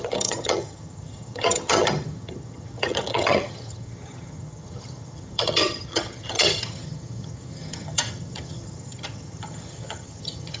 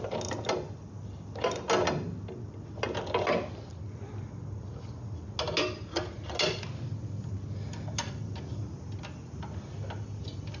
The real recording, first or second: second